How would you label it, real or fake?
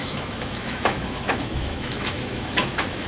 fake